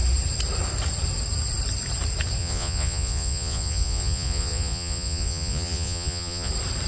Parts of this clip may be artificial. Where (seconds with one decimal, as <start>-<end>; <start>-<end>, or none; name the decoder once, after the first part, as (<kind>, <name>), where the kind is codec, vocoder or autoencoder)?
2.4-6.5 (vocoder, Vocos)